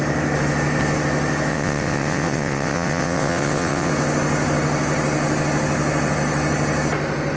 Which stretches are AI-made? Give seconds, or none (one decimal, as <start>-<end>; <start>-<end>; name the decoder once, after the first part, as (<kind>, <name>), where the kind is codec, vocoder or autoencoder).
1.5-3.9 (vocoder, WaveNeXt)